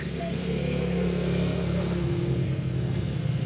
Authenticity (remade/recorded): remade